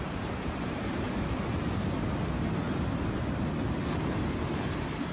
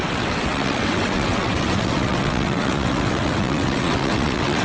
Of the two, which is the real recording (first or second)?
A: first